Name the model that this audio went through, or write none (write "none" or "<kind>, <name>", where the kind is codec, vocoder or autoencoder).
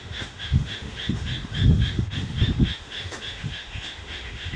autoencoder, DAC-VAE